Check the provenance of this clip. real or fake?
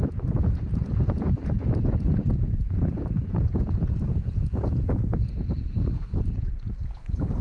fake